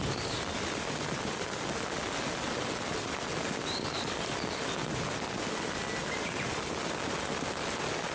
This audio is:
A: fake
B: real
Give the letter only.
B